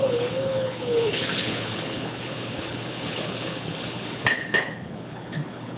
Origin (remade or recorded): remade